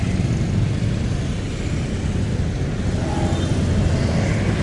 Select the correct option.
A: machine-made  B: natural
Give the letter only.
B